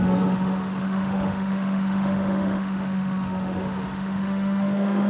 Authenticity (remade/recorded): remade